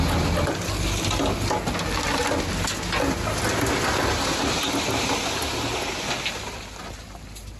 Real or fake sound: real